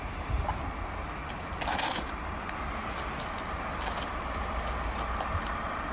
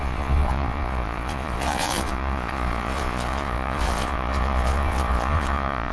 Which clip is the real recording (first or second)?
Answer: first